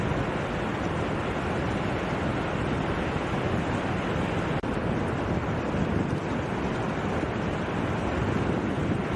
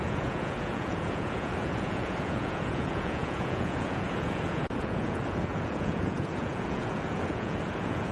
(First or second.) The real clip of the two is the first